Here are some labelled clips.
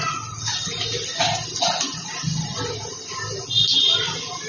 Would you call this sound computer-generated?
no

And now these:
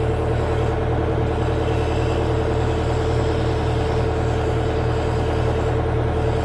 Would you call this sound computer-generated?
no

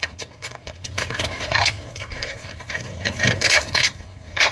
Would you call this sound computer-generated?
yes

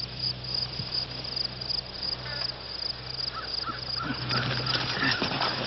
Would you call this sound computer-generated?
no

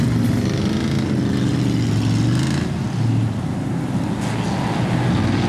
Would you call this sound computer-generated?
no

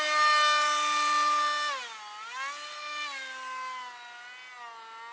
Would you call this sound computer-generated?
no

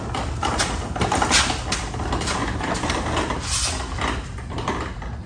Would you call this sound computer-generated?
no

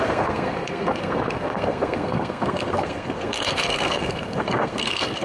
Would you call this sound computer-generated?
yes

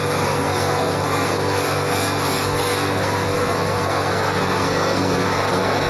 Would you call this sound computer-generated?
yes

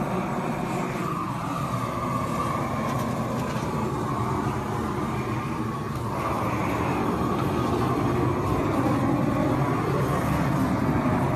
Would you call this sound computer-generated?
no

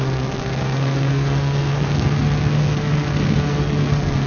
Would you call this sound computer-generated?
yes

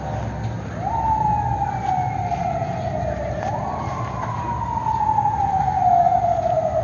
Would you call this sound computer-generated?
no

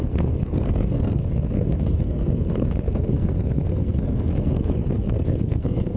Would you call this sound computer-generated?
yes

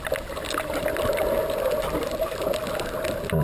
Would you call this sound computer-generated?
no